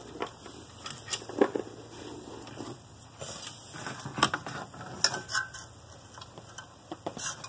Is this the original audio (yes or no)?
yes